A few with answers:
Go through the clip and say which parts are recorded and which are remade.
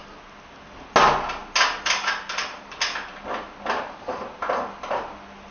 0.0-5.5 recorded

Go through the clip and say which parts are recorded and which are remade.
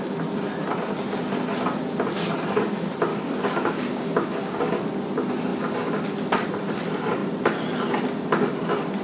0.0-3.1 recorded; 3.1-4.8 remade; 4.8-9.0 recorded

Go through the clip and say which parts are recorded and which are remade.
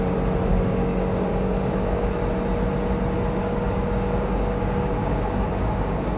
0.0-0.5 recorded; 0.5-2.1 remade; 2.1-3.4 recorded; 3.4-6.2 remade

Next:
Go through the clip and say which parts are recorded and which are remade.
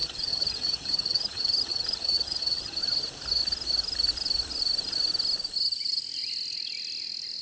0.0-2.8 remade; 2.8-7.4 recorded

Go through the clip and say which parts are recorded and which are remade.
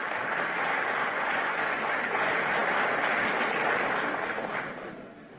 0.0-1.0 recorded; 1.0-1.8 remade; 1.8-5.4 recorded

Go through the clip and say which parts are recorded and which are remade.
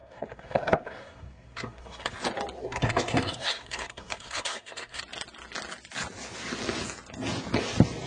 0.0-2.1 remade; 2.1-2.6 recorded; 2.6-5.0 remade; 5.0-8.1 recorded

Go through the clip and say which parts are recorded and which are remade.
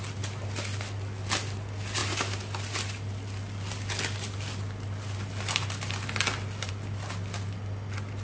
0.0-8.2 recorded